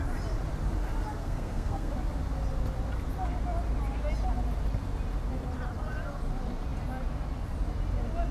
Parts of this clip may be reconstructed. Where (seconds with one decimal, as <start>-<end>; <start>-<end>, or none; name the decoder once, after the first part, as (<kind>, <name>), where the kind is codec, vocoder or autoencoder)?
1.2-1.9 (codec, SNAC)